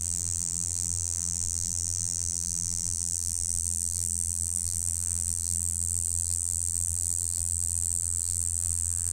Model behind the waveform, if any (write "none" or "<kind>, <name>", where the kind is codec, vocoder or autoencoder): vocoder, BigVGAN v2